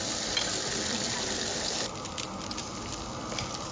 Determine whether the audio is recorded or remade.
recorded